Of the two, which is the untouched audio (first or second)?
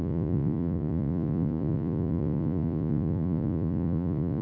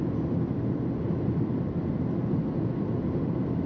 second